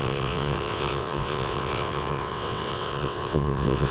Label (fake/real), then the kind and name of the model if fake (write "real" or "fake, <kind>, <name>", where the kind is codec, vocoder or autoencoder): fake, vocoder, WaveNeXt